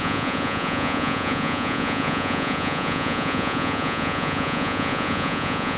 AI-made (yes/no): yes